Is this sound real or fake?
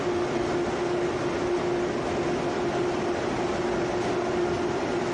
real